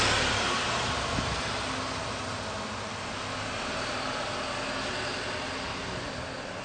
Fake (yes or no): no